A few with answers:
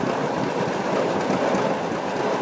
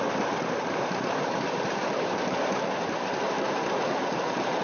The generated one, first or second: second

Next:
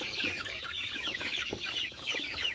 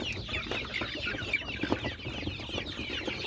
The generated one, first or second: first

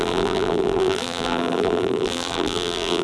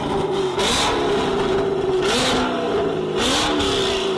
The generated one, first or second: first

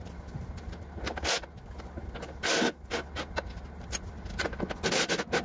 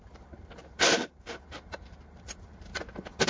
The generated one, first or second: second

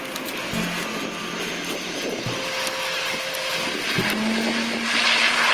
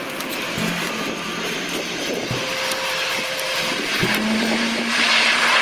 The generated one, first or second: second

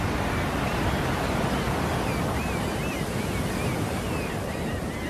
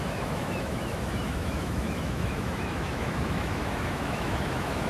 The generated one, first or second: second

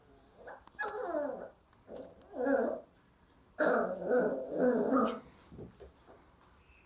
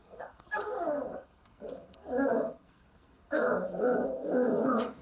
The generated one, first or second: second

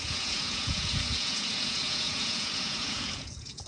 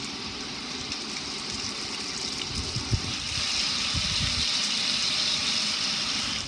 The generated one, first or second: first